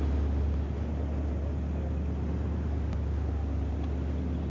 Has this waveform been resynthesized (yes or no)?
no